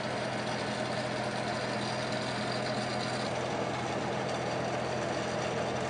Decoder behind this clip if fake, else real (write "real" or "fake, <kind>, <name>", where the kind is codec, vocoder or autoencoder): real